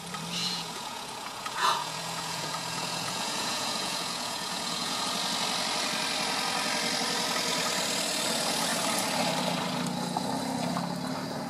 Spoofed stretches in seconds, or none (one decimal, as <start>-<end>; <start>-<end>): 0.4-5.0